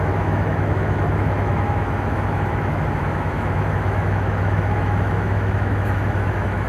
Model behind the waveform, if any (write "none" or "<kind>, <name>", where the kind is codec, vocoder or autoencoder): autoencoder, DAC-VAE